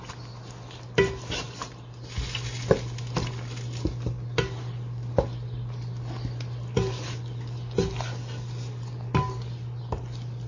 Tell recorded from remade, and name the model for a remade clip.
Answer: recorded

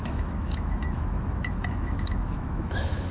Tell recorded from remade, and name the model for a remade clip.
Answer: remade, autoencoder, DAC-VAE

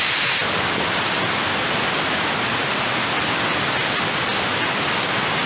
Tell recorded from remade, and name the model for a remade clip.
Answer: recorded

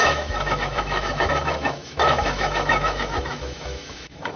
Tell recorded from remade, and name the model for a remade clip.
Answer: remade, autoencoder, DAC-VAE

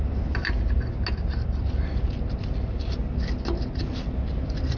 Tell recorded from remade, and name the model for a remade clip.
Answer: recorded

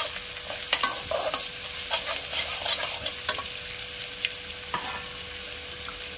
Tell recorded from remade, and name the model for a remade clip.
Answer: recorded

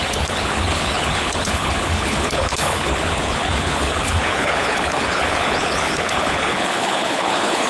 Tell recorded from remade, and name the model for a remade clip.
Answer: remade, codec, HILCodec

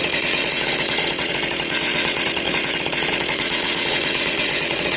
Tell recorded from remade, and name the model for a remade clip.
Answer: remade, vocoder, Vocos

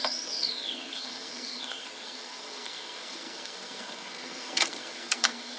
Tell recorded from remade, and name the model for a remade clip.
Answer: remade, codec, SNAC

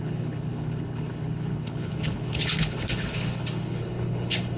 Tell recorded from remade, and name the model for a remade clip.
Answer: remade, codec, HILCodec